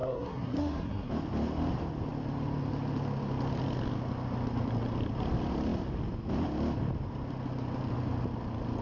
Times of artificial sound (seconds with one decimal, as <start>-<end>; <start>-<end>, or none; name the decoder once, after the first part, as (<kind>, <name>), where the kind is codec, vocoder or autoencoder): 0.0-1.1 (codec, SNAC)